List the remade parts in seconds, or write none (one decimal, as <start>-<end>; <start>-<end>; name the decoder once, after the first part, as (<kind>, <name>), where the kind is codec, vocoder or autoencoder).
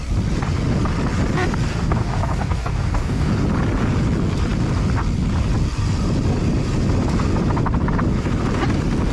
1.7-3.3 (codec, DAC)